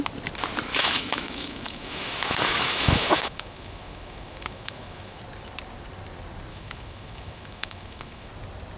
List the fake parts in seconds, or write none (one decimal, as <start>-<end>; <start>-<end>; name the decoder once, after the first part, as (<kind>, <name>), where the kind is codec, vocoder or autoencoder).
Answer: 0.7-5.2 (autoencoder, DAC-VAE); 6.5-8.3